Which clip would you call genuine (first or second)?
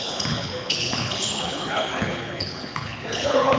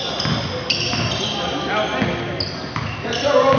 second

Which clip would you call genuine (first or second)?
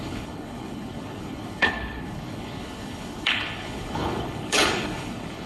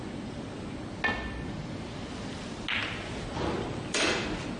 second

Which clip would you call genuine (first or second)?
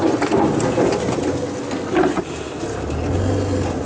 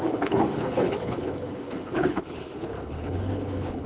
first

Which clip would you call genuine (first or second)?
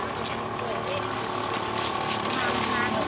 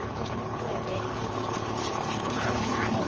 first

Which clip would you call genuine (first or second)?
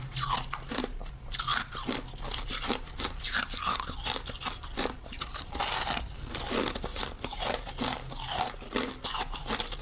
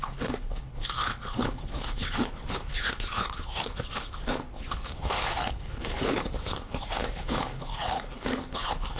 first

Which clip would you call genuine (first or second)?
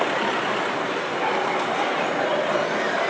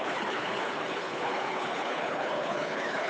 first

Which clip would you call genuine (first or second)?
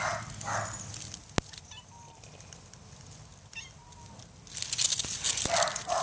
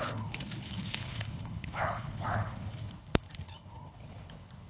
first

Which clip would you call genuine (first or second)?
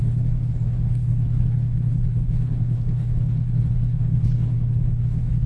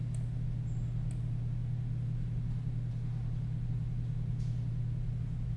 second